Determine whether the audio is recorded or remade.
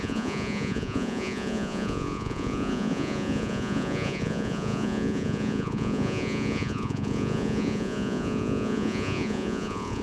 remade